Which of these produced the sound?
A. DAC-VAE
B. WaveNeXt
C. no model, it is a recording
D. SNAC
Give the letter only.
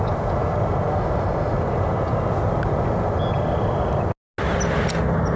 C